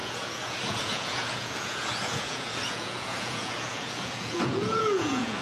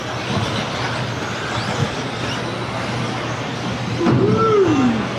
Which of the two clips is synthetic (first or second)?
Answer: first